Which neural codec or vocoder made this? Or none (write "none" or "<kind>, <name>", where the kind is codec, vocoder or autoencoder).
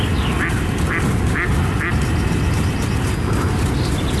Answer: none